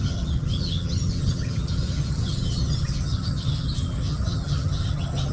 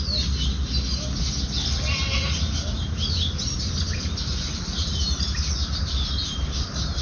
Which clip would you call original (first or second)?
second